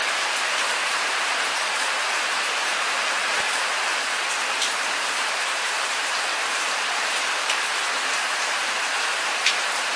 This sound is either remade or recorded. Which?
remade